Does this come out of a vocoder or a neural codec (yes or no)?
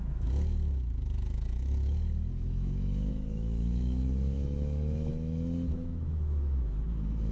yes